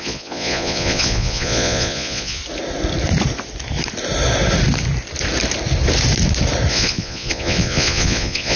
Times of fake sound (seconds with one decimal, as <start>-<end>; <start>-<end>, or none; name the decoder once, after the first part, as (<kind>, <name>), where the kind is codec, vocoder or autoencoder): 0.0-2.4 (vocoder, Vocos); 6.7-8.6